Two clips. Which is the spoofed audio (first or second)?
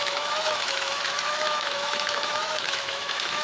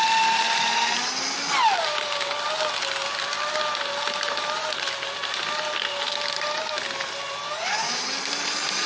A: first